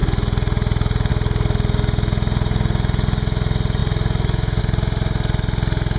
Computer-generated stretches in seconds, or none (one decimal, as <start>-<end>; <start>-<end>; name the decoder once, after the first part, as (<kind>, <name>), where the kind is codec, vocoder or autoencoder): none